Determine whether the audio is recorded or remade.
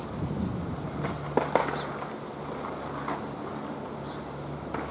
recorded